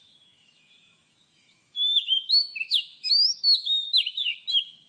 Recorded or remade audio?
remade